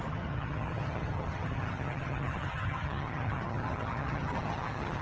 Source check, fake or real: fake